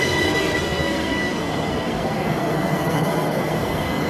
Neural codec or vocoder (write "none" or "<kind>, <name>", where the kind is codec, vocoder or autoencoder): codec, SNAC